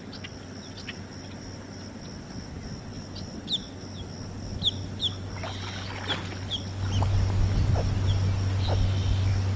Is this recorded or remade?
recorded